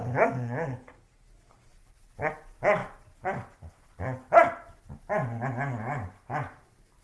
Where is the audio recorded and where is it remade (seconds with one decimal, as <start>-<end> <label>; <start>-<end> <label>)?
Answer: 0.0-7.0 recorded